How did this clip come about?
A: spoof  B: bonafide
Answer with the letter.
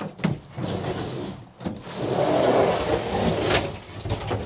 B